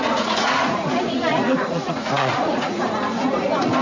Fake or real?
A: fake